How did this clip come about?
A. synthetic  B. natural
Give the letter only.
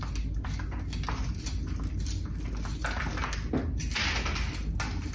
B